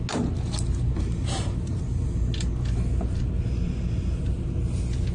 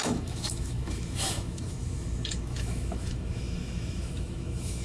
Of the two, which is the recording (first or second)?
first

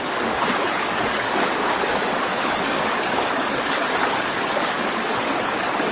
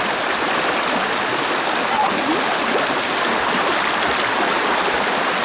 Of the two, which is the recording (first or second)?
second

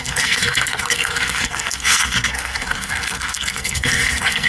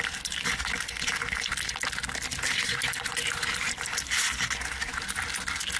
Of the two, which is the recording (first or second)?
second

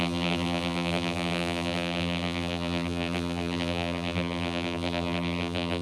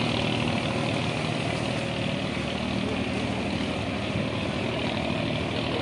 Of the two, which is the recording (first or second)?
second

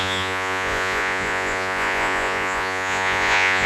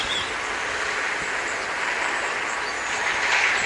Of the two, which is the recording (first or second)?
second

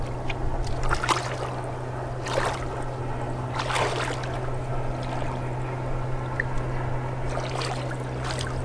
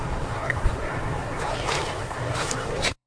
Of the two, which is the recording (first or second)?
first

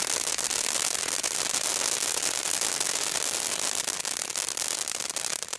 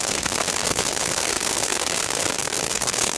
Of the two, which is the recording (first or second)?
first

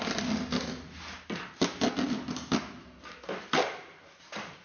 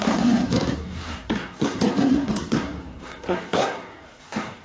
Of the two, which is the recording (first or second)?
first